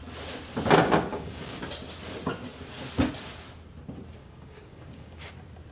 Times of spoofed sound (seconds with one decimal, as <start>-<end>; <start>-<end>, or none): 1.1-1.6; 4.2-5.3